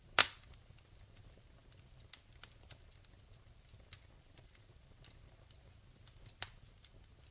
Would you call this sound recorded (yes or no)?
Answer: yes